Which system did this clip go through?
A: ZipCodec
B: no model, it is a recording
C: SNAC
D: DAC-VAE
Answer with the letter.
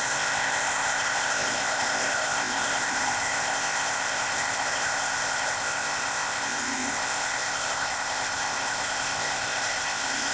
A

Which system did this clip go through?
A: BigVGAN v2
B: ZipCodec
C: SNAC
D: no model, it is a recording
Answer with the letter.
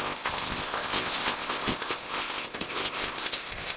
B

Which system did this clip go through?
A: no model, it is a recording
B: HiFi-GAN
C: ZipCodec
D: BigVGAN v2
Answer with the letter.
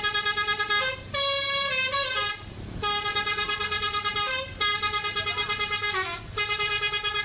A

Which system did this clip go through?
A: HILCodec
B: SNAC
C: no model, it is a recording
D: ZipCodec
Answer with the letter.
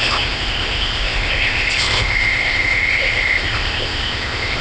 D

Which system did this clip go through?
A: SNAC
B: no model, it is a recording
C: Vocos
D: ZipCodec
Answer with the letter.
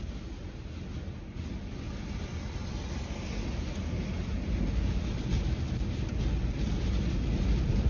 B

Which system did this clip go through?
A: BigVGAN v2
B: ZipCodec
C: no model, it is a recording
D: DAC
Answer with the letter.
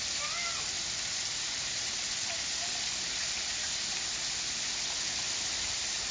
C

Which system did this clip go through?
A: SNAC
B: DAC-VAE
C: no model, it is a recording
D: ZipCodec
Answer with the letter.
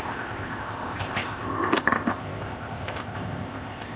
D